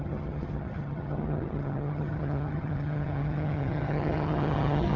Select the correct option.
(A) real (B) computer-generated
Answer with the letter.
B